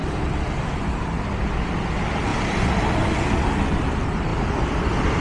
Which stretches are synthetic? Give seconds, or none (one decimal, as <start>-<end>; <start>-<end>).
0.0-0.6; 2.3-3.1